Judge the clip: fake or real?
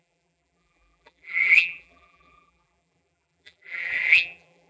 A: fake